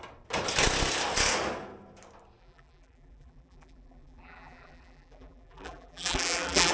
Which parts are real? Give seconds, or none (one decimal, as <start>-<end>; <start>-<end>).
0.0-2.4